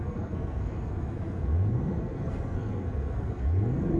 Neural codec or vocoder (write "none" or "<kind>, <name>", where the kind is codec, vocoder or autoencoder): codec, SNAC